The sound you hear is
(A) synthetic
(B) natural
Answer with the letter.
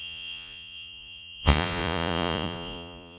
A